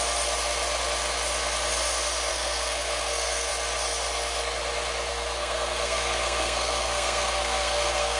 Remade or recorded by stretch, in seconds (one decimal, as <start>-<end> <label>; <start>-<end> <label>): 0.0-2.3 recorded; 2.3-3.5 remade; 3.5-5.1 recorded; 5.1-8.2 remade